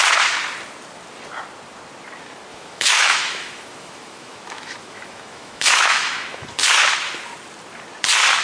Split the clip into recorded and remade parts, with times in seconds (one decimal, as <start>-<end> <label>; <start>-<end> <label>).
0.0-2.5 recorded; 2.5-6.6 remade; 6.6-8.4 recorded